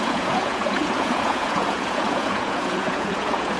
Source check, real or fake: fake